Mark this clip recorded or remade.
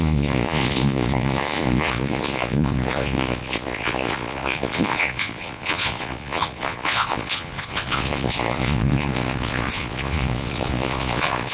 remade